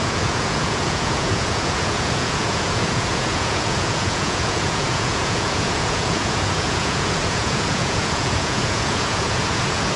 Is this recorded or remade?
remade